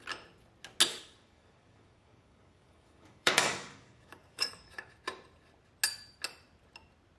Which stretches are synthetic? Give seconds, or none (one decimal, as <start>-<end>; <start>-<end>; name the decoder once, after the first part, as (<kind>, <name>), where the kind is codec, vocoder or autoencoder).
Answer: 0.9-4.9 (codec, DAC)